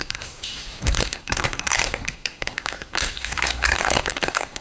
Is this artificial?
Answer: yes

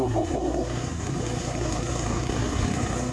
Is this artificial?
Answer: yes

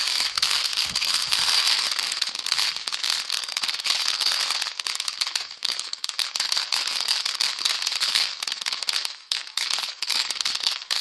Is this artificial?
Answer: yes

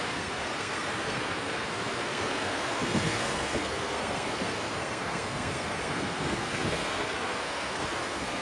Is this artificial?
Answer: yes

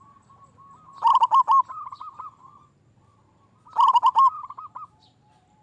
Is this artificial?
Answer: no